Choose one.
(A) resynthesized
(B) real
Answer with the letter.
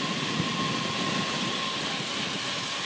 B